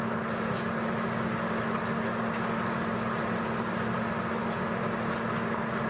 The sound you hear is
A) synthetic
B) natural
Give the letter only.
B